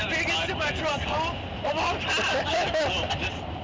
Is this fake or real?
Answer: real